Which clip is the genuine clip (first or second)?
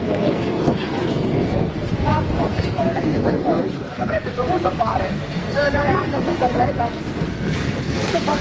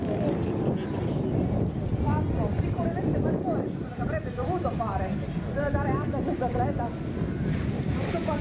second